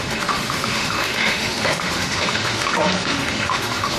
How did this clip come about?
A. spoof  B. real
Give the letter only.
A